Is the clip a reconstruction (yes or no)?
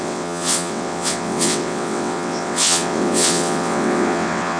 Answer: yes